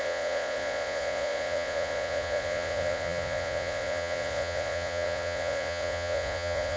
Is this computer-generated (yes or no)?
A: yes